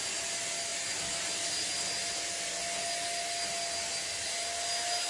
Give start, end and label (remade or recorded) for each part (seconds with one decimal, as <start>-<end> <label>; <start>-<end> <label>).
0.0-5.1 recorded